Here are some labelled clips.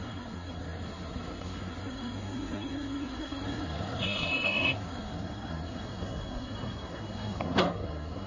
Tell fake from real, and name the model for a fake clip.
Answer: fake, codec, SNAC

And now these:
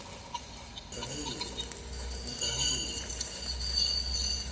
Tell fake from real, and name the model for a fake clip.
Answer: real